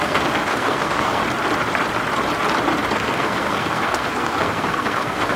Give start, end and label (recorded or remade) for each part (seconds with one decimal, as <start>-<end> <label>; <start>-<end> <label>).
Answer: 0.0-1.2 remade; 1.2-3.0 recorded; 3.0-5.4 remade